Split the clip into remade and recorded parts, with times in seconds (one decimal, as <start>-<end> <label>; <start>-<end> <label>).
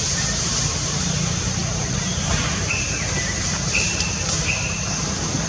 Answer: 0.0-5.5 remade